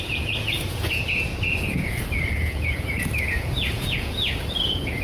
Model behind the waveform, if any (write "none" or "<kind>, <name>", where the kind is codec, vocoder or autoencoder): vocoder, Vocos